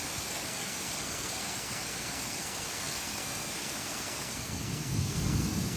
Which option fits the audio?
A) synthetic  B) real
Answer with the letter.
A